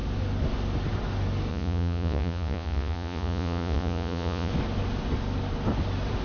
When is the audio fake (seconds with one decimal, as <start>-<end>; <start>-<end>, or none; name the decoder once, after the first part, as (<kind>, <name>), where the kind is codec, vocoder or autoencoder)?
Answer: 1.5-4.5 (vocoder, Vocos)